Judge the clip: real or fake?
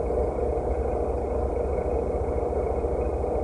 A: real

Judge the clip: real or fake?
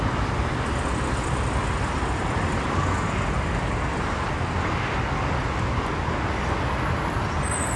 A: real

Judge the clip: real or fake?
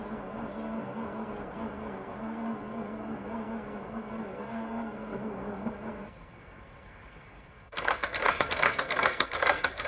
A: fake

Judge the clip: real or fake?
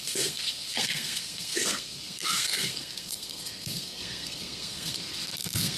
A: fake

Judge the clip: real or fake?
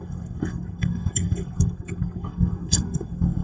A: fake